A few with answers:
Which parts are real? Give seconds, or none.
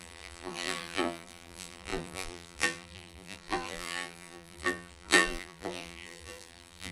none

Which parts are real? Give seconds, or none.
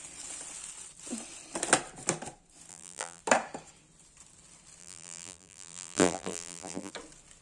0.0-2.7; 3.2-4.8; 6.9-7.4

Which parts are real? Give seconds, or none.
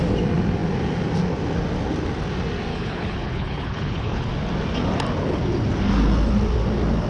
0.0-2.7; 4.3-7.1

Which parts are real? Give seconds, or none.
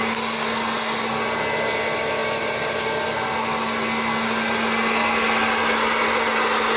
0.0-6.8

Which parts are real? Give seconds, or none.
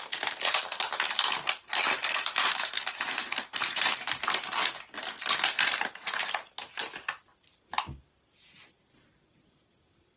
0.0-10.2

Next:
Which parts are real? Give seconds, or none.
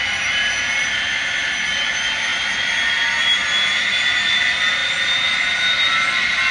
0.0-6.5